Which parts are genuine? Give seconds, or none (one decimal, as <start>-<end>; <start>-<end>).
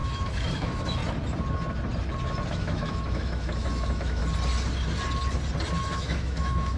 1.0-2.5; 4.2-5.8